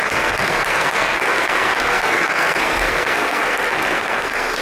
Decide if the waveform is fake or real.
fake